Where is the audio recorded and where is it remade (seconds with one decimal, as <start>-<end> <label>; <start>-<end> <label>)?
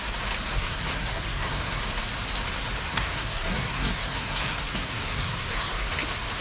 0.0-0.5 recorded; 0.5-1.8 remade; 1.8-2.9 recorded; 2.9-5.9 remade; 5.9-6.4 recorded